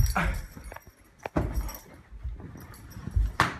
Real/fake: real